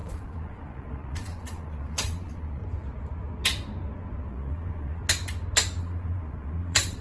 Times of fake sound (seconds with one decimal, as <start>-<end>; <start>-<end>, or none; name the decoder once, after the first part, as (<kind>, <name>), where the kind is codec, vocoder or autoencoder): 0.0-2.6 (vocoder, Vocos); 4.3-5.0; 5.8-7.0